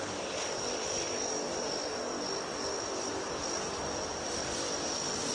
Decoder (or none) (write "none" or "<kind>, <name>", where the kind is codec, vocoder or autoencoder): none